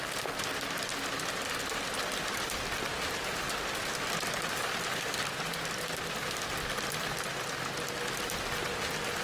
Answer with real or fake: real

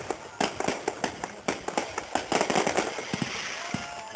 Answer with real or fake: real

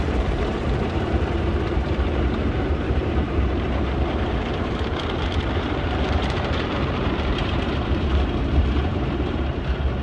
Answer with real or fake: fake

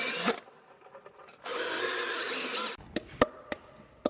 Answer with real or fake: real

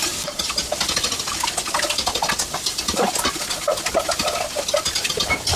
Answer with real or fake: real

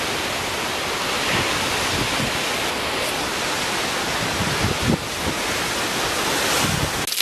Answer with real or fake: real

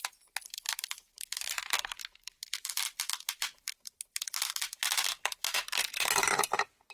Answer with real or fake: fake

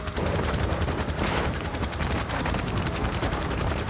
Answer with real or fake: fake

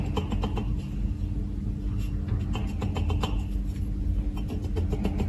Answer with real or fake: real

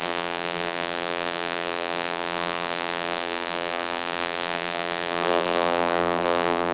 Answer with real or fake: fake